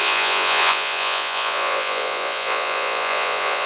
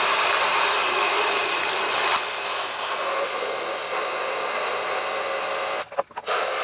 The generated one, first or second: first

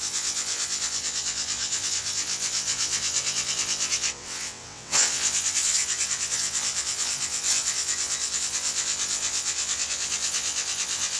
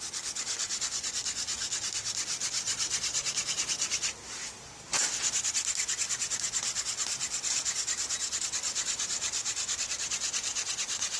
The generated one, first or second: first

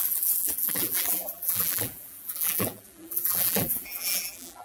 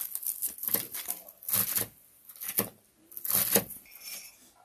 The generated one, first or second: first